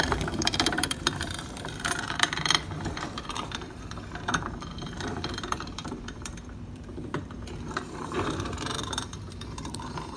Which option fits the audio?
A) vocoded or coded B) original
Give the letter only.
A